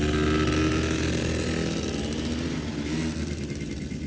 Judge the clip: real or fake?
real